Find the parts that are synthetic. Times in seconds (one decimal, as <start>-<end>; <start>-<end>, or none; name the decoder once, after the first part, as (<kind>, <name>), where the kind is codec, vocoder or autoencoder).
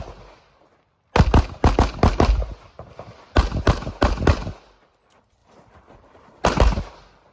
none